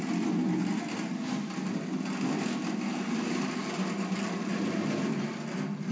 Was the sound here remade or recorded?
recorded